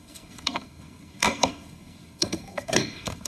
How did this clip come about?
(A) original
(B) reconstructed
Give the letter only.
B